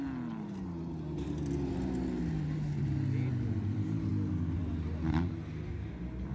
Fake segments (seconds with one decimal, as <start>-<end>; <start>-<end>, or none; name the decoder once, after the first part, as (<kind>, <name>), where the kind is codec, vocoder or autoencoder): none